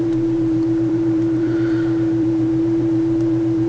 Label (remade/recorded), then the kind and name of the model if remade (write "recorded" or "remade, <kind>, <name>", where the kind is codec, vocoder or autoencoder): remade, vocoder, BigVGAN v2